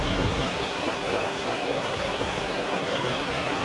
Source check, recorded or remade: remade